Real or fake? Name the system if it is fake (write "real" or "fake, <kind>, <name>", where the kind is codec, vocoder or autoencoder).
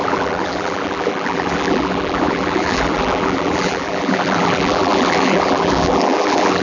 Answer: fake, vocoder, BigVGAN v2